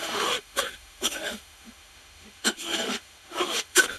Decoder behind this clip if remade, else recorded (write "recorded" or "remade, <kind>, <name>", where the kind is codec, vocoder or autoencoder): remade, autoencoder, DAC-VAE